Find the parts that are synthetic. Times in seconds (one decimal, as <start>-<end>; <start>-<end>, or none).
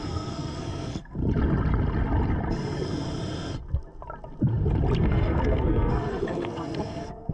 0.0-1.2; 5.0-7.3